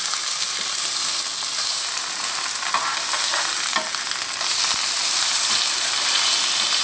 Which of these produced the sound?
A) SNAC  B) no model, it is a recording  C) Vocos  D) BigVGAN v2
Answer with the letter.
B